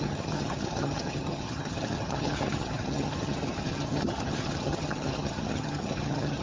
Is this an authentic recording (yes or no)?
no